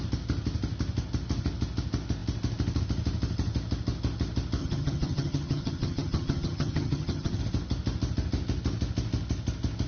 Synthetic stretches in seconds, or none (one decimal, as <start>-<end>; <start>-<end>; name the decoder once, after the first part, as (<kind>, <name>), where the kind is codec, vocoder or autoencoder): 4.6-7.4 (vocoder, HiFi-GAN)